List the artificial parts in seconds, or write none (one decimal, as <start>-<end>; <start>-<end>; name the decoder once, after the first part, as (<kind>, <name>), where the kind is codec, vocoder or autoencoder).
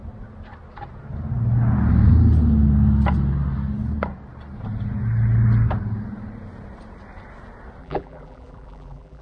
7.8-9.2 (vocoder, BigVGAN v2)